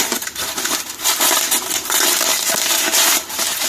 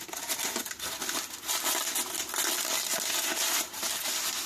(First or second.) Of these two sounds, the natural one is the second